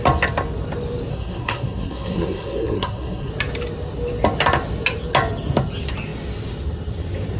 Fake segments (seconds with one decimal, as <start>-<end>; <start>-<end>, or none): 1.1-3.3